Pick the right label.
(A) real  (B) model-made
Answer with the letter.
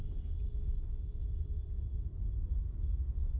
A